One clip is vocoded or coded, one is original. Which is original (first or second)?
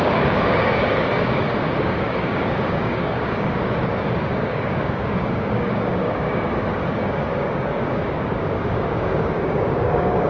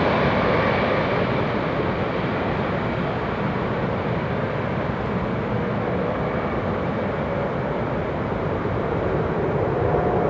second